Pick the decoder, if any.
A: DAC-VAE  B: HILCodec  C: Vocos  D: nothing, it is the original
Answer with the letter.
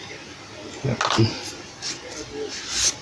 D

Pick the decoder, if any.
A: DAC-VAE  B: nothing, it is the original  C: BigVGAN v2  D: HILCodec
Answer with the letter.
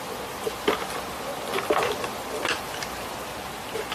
B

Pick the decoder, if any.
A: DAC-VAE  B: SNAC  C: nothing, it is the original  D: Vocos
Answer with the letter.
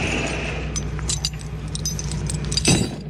C